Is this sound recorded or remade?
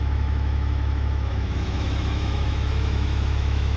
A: remade